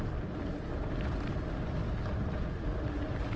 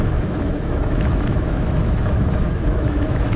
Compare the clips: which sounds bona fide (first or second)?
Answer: first